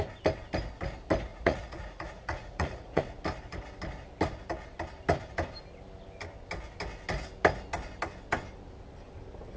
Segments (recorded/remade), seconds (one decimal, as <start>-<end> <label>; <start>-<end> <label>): 0.0-1.3 recorded; 1.3-3.0 remade; 3.0-9.6 recorded